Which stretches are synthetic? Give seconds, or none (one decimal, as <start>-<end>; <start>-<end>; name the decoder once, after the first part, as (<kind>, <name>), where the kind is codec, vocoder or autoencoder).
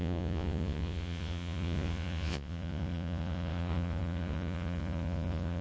0.0-5.6 (vocoder, Vocos)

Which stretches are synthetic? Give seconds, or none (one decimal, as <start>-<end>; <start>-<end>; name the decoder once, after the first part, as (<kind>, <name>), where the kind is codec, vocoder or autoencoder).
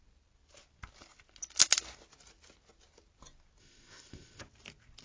3.6-4.4 (codec, ZipCodec)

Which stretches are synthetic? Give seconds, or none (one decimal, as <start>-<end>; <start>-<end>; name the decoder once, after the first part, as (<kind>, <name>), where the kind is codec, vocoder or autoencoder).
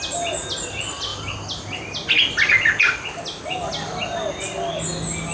none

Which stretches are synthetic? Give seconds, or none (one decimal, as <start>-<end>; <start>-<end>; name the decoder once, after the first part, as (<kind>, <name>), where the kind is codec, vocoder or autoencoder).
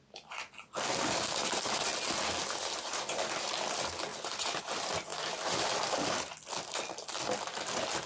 none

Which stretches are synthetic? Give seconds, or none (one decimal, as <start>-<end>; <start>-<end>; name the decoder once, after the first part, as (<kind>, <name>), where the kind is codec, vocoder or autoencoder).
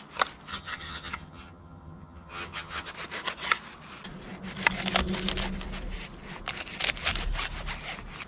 0.5-2.9 (vocoder, HiFi-GAN)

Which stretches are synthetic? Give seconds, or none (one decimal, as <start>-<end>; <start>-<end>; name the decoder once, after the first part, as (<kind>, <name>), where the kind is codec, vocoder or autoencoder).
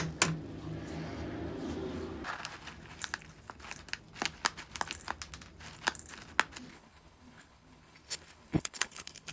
6.7-9.3 (codec, HILCodec)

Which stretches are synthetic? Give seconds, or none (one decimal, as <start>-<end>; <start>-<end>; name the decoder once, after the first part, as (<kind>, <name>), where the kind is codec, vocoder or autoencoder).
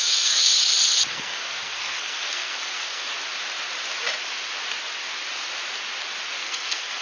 0.0-0.6 (codec, SNAC); 1.1-3.1; 6.4-7.0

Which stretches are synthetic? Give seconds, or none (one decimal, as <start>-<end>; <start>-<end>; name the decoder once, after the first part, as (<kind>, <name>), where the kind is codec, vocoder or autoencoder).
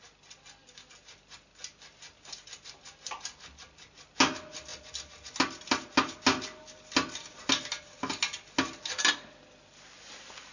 none